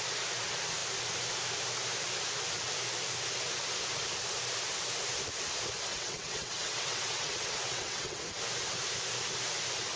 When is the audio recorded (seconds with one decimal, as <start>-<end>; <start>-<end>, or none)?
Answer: 0.0-5.9; 8.2-10.0